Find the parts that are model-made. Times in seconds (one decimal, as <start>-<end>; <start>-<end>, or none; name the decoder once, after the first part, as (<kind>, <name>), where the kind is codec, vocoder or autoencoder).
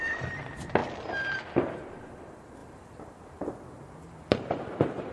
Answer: 2.6-4.5 (vocoder, BigVGAN v2)